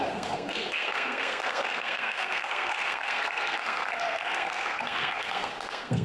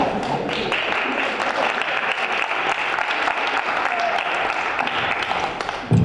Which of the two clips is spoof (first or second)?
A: first